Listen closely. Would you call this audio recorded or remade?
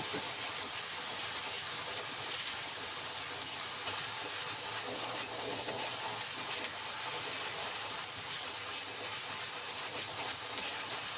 recorded